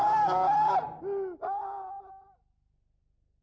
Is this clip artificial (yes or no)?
no